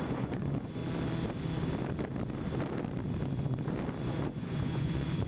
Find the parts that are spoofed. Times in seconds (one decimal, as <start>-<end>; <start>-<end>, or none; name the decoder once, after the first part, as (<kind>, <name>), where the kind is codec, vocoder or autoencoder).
0.0-0.8 (vocoder, Vocos); 4.0-5.3